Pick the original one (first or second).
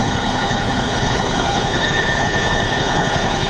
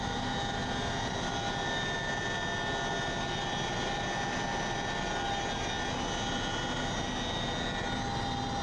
second